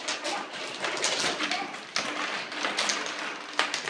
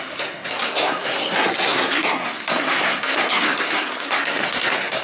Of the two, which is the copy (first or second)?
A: second